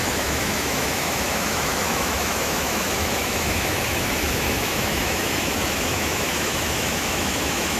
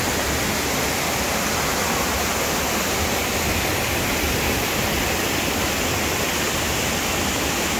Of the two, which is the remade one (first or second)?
first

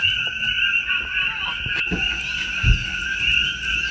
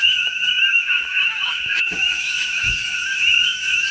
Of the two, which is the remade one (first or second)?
second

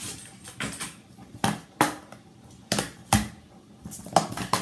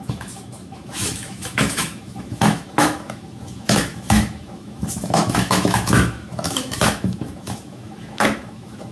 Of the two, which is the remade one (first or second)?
second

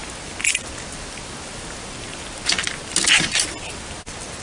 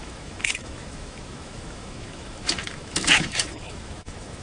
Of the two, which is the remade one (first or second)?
second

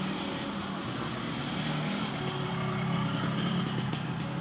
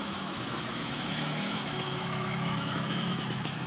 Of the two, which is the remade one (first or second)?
second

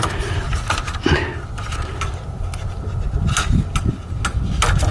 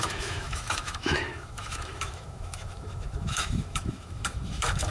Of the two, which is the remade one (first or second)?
second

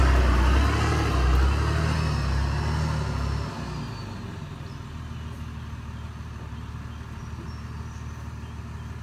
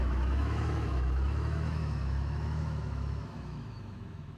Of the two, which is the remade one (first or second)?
second